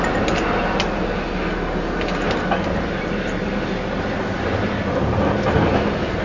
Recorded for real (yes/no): yes